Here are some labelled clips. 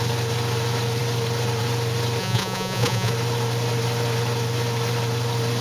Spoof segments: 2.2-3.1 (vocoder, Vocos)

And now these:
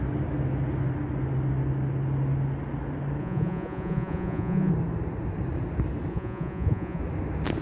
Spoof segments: 3.2-4.7 (vocoder, Vocos); 6.1-7.0

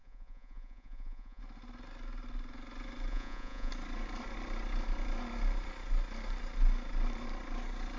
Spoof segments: 0.0-1.4 (vocoder, Vocos); 3.1-3.7

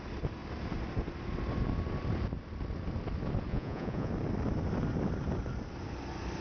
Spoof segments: 3.5-4.1 (vocoder, Vocos)

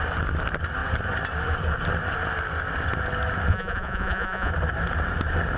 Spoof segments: 3.5-4.5 (vocoder, Vocos)